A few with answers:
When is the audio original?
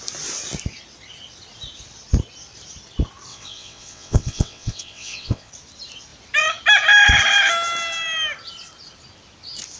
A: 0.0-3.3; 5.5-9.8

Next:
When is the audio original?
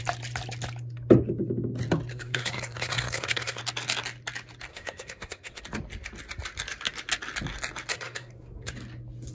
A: 0.0-2.1; 3.6-4.7; 5.6-7.9; 8.7-9.3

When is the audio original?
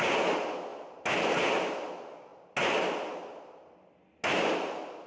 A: 0.0-5.1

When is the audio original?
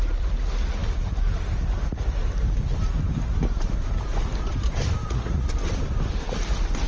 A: 0.0-5.0; 5.5-6.9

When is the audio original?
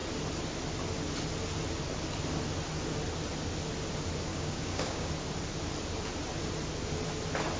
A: 0.0-4.3; 5.1-7.6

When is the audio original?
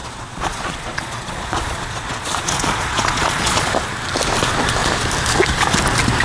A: 3.7-6.2